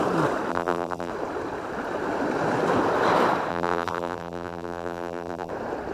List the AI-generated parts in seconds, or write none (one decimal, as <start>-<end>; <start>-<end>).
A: 0.5-1.1; 3.5-5.5